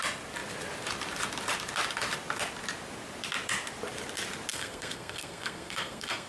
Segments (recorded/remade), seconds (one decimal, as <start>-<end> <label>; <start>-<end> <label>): 0.0-4.5 recorded; 4.5-6.3 remade